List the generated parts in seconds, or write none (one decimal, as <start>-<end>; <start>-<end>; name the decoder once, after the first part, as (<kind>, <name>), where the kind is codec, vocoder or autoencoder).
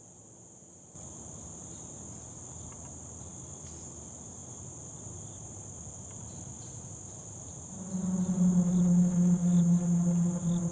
none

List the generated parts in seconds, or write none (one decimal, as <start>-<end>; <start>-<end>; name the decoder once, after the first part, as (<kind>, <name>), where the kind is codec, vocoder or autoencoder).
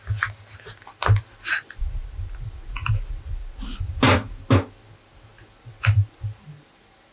none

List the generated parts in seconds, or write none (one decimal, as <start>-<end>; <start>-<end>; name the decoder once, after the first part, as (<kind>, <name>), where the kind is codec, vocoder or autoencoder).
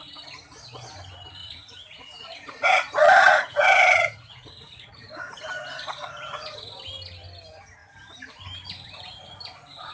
1.4-5.3 (vocoder, Vocos)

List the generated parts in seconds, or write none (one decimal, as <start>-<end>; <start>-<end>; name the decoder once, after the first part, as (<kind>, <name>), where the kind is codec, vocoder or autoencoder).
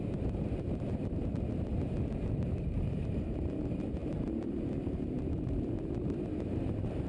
0.0-7.1 (vocoder, BigVGAN v2)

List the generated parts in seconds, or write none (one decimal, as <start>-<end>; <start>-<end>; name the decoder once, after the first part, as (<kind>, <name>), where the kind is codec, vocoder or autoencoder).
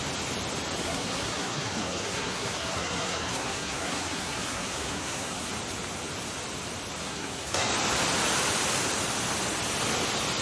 0.8-5.5 (codec, SNAC); 7.0-7.7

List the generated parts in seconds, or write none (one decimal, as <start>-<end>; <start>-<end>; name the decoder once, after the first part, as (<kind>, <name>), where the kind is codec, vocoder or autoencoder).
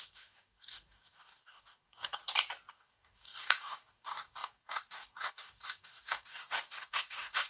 0.0-2.2 (codec, DAC); 2.7-7.5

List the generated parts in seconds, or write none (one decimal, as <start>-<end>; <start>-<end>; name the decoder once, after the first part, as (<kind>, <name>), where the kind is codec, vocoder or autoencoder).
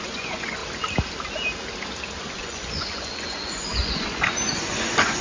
0.0-0.6 (vocoder, Vocos); 2.3-5.2